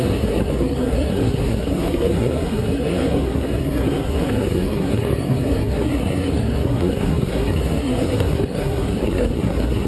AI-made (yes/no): yes